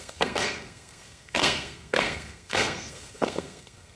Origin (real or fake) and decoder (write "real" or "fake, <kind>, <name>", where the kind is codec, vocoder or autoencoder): fake, codec, SNAC